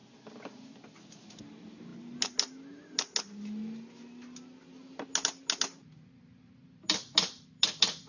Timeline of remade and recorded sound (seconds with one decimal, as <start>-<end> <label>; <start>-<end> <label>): 0.0-8.1 recorded